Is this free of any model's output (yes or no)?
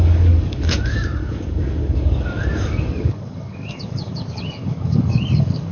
no